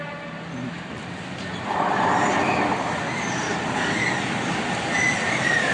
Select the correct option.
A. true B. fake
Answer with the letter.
A